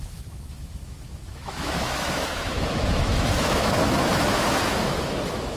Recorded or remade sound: remade